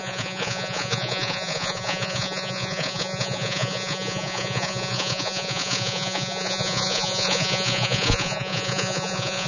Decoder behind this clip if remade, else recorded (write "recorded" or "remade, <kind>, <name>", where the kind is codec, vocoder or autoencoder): remade, vocoder, Vocos